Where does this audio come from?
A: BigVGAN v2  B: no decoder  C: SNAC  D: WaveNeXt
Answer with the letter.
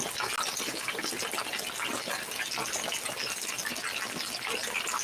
B